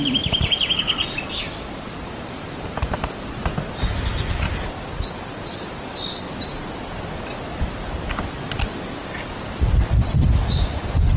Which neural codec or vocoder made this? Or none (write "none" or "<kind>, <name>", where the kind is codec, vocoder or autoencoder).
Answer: none